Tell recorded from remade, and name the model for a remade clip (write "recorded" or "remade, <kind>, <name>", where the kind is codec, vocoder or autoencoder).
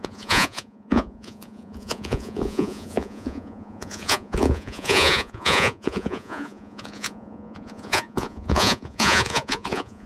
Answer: remade, vocoder, Vocos